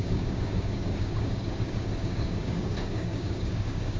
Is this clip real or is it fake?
fake